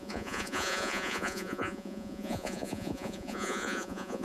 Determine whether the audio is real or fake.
fake